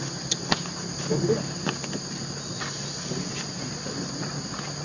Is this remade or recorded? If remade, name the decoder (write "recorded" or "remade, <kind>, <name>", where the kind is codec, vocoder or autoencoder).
recorded